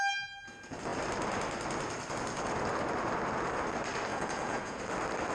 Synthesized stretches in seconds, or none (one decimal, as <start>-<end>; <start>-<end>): 4.1-4.8